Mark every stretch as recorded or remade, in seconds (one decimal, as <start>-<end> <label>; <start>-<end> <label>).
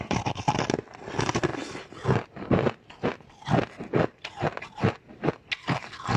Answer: 0.0-6.2 recorded